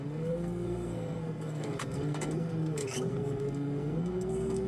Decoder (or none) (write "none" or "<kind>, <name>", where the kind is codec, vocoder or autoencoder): codec, SNAC